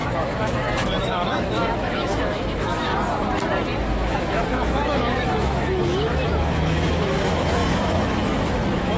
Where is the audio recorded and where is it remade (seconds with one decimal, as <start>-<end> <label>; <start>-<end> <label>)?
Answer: 0.0-2.9 remade; 2.9-3.9 recorded; 3.9-9.0 remade